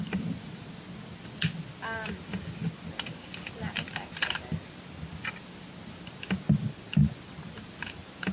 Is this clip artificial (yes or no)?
no